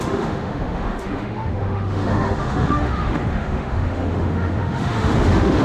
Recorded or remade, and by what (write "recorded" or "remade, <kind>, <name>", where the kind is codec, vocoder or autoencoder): remade, autoencoder, DAC-VAE